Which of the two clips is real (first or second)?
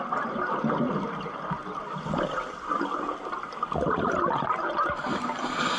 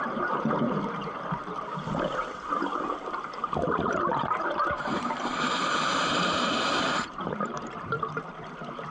first